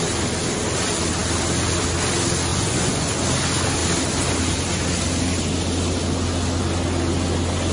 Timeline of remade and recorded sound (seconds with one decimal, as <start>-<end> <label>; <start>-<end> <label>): 0.0-2.5 recorded; 2.5-3.1 remade; 3.1-7.7 recorded